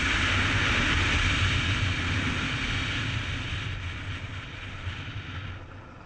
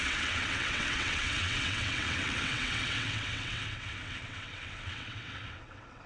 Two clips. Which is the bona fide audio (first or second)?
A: first